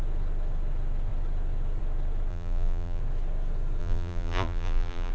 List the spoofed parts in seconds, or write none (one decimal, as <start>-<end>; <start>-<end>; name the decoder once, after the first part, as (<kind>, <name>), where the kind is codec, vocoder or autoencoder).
2.3-3.0 (vocoder, BigVGAN v2); 3.8-5.1